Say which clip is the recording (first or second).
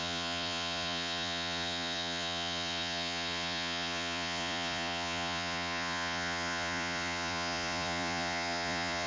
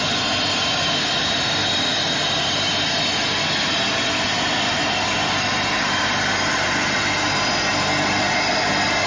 second